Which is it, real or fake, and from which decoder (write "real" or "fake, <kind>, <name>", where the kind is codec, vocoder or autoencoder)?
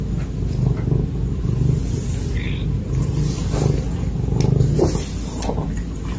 real